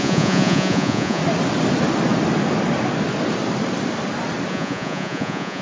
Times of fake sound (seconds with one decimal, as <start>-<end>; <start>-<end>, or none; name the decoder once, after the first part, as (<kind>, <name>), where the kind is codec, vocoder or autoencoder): 0.0-1.2 (vocoder, Vocos); 4.5-5.6